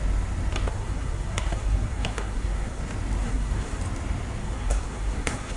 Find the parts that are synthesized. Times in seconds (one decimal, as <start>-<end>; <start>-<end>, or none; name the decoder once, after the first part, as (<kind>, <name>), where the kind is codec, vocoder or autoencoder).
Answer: 0.7-2.8 (codec, SNAC); 3.2-3.8; 4.4-5.6